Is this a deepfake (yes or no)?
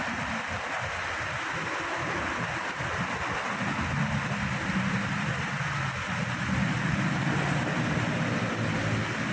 no